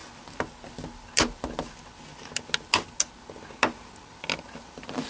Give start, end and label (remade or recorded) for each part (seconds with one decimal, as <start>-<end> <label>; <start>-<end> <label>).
0.0-5.1 recorded